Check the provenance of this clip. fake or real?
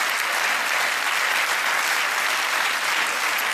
real